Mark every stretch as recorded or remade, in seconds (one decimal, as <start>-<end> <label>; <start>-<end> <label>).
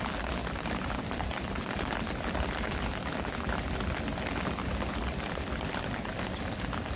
0.0-7.0 recorded